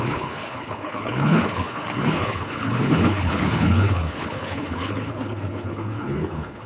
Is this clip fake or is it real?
fake